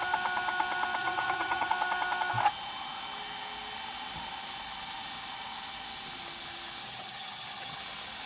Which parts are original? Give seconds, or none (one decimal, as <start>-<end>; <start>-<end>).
0.0-1.0; 1.7-6.8; 7.8-8.3